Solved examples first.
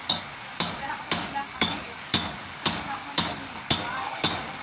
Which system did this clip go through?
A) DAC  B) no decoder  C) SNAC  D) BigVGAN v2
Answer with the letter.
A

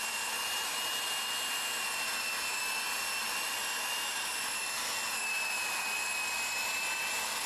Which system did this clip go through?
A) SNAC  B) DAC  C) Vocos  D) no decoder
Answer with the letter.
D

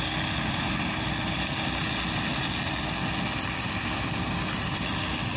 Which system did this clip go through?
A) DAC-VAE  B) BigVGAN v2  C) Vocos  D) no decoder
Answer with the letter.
D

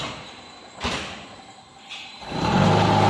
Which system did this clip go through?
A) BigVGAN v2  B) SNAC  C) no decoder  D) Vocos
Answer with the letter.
C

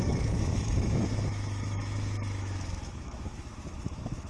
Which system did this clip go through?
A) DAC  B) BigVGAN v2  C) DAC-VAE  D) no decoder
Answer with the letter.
C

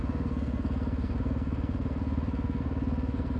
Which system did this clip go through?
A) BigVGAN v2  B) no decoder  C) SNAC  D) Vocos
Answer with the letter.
C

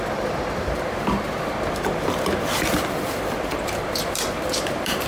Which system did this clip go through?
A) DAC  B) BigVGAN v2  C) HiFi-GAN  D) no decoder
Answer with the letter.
B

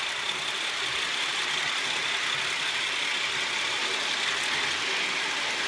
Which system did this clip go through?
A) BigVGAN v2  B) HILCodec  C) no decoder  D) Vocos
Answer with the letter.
C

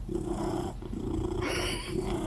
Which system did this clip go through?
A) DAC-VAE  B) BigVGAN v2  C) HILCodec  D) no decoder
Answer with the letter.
D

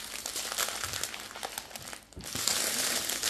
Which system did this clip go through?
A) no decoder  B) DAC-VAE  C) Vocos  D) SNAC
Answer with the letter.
A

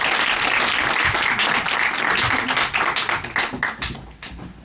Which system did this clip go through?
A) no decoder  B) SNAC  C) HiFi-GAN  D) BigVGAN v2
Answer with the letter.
A